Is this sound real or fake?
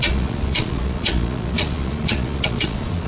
fake